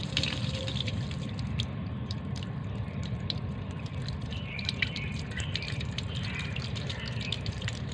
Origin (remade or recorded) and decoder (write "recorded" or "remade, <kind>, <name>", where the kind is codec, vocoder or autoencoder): remade, vocoder, BigVGAN v2